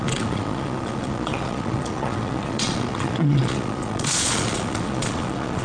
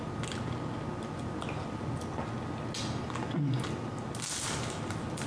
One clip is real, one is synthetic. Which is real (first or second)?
second